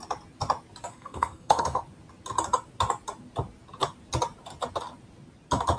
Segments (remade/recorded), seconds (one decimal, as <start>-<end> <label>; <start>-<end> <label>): 0.0-0.9 recorded; 0.9-1.8 remade; 1.8-5.8 recorded